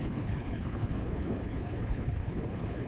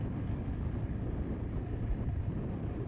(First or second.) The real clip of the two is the second